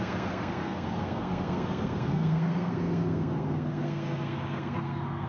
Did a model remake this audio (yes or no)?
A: yes